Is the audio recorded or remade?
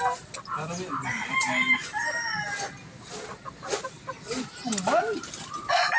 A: recorded